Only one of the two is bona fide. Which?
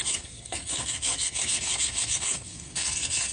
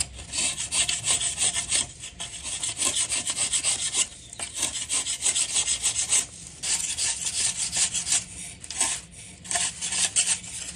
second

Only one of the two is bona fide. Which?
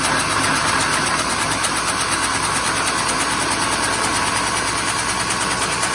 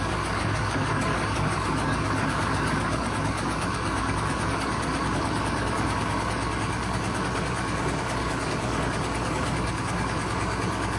first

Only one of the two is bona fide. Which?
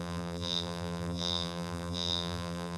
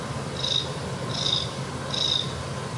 second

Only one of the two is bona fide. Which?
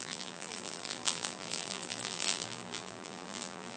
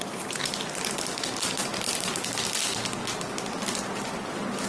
second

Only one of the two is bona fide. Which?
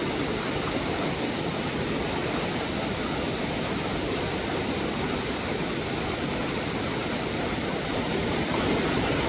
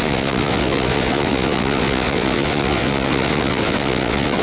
first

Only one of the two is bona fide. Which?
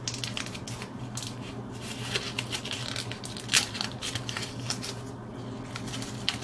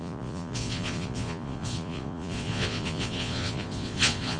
first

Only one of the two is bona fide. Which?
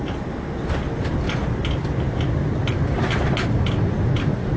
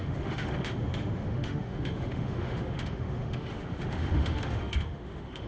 first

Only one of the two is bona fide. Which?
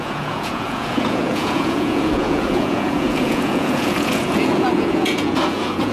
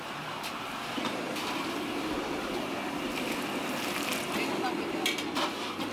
second